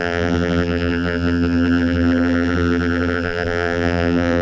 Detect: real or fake fake